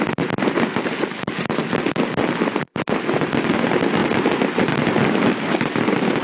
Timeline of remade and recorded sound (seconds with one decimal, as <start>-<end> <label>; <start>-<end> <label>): 0.0-6.2 recorded